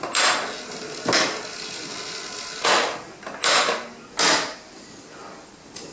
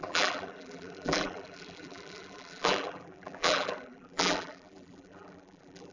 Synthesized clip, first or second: second